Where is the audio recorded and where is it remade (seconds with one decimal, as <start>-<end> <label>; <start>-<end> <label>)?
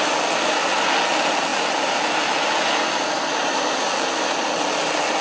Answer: 0.0-5.2 recorded